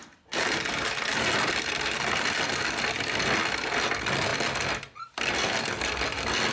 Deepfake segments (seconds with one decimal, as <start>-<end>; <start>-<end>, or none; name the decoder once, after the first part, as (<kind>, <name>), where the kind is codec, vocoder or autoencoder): none